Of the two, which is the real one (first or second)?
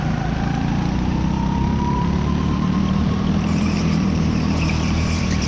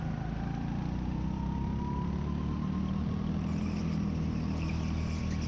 second